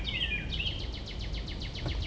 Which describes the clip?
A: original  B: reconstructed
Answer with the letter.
A